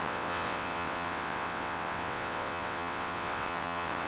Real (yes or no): no